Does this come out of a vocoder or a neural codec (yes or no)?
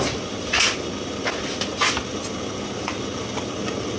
no